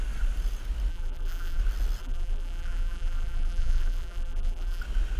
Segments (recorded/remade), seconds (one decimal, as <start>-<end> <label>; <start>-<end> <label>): 0.0-0.9 recorded; 0.9-1.6 remade; 1.6-2.0 recorded; 2.0-4.8 remade; 4.8-5.2 recorded